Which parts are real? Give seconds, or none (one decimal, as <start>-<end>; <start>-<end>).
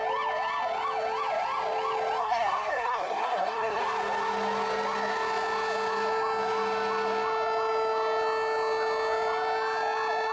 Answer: 0.0-2.2; 3.8-10.3